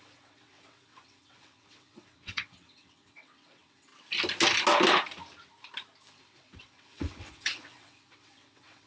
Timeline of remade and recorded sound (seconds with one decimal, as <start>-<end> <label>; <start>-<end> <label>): 0.0-3.9 remade; 3.9-6.2 recorded; 6.2-8.9 remade